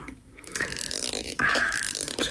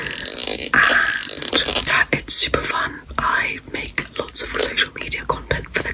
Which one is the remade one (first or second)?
first